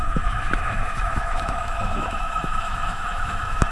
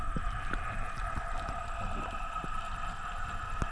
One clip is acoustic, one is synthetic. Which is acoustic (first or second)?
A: second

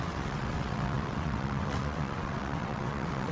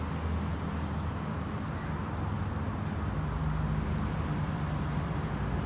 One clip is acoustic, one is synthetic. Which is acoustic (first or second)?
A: second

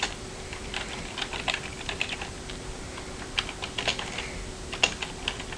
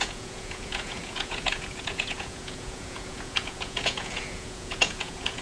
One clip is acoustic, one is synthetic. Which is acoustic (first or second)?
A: first